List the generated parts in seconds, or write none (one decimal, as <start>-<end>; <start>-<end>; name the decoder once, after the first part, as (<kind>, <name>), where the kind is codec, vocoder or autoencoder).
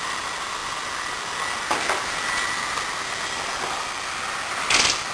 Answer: none